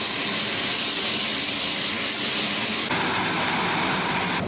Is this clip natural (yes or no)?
yes